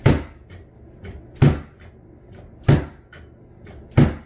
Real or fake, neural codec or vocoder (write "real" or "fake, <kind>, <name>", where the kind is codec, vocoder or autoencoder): real